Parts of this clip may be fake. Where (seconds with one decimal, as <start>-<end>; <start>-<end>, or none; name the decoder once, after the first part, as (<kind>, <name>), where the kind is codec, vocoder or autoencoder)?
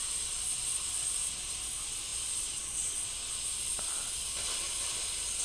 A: none